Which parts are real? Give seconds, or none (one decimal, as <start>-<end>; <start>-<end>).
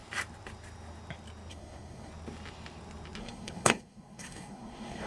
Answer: 0.0-1.5; 2.1-3.2